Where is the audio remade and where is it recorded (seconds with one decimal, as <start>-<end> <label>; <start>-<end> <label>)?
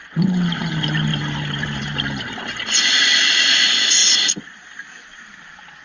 0.0-1.1 recorded; 1.1-2.2 remade; 2.2-5.8 recorded